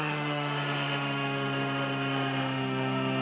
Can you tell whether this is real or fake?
fake